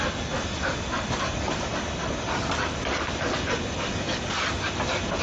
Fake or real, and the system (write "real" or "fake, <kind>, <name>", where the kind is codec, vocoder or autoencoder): real